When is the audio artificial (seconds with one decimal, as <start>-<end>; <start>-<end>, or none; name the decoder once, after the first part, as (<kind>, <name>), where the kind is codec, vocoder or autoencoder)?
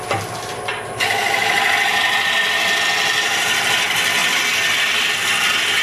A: none